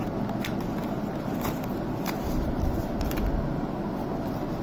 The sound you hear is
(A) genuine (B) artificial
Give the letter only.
A